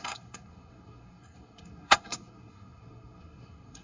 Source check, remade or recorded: remade